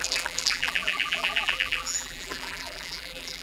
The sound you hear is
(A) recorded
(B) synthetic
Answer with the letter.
B